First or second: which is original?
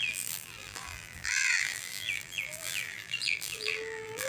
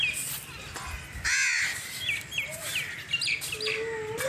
second